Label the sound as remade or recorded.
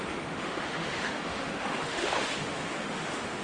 remade